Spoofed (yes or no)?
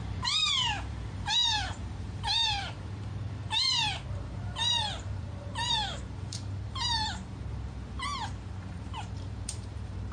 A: yes